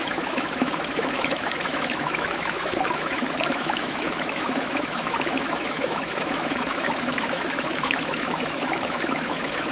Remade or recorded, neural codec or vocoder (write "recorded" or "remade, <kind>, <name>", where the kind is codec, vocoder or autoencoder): remade, autoencoder, DAC-VAE